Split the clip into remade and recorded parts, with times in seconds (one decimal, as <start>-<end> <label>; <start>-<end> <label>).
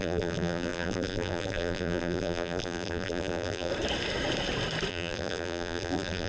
0.0-3.7 remade; 3.7-4.9 recorded; 4.9-6.3 remade